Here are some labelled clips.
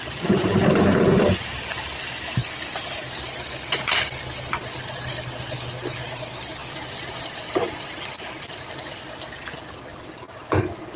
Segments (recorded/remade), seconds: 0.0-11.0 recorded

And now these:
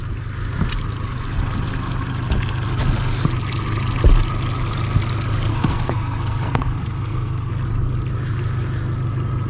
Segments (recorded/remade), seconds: 0.0-5.5 recorded; 5.5-7.5 remade; 7.5-9.5 recorded

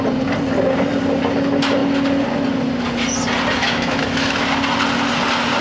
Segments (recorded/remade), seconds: 0.0-3.6 recorded; 3.6-4.4 remade; 4.4-5.6 recorded

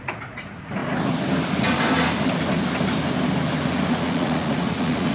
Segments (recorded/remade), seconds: 0.0-0.8 remade; 0.8-3.9 recorded; 3.9-5.1 remade

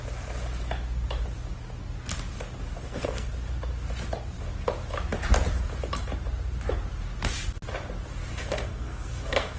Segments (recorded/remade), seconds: 0.0-2.8 recorded; 2.8-3.3 remade; 3.3-8.3 recorded; 8.3-9.6 remade